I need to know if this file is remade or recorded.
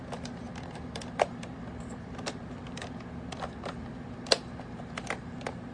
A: remade